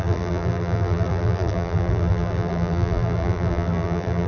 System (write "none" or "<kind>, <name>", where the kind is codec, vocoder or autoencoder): vocoder, BigVGAN v2